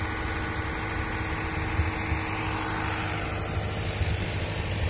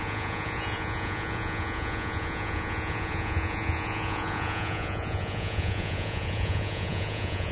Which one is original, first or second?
first